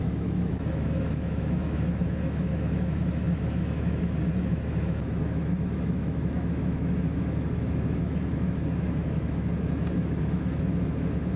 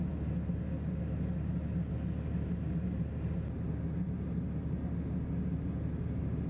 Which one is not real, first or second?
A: first